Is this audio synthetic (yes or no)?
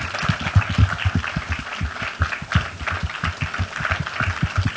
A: no